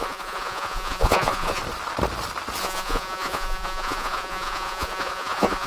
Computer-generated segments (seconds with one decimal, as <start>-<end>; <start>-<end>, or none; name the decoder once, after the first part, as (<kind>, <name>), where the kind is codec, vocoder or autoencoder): 0.0-1.6 (vocoder, Vocos); 2.6-5.7